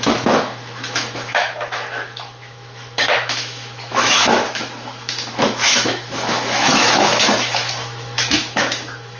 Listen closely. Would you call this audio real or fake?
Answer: fake